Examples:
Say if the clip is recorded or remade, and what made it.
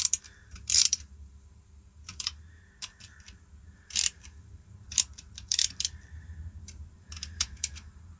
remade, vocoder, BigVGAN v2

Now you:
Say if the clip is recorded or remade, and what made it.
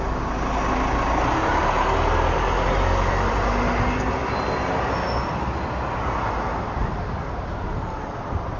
recorded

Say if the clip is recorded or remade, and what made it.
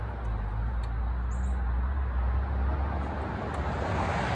recorded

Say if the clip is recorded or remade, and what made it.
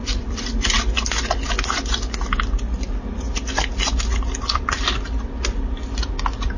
remade, vocoder, BigVGAN v2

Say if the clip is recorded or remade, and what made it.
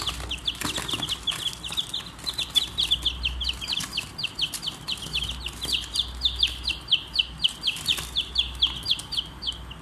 recorded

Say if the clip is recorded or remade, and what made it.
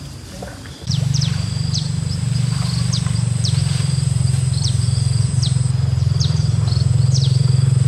remade, vocoder, BigVGAN v2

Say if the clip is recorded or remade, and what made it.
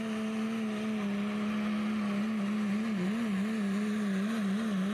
recorded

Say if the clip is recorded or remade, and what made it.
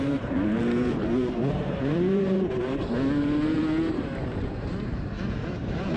remade, vocoder, BigVGAN v2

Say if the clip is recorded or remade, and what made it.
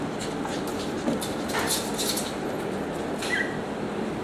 recorded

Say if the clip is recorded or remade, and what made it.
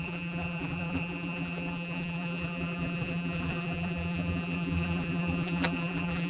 remade, vocoder, BigVGAN v2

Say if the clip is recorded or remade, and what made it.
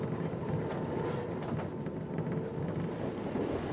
recorded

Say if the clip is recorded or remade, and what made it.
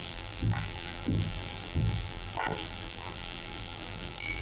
remade, vocoder, BigVGAN v2